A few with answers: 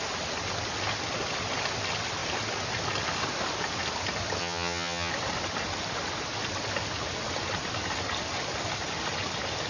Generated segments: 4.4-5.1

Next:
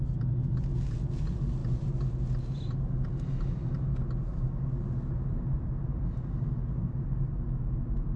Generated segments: none

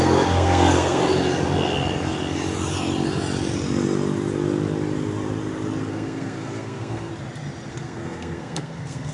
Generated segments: 0.0-1.0; 5.9-7.1; 7.7-9.1

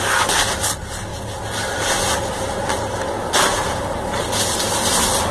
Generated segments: none

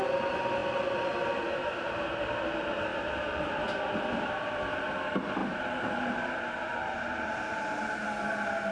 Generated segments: 1.6-2.4; 2.9-4.6; 5.4-7.8

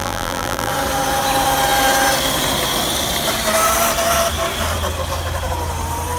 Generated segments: 0.0-0.7

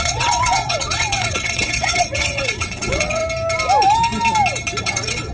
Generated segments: 0.0-3.2; 4.8-5.3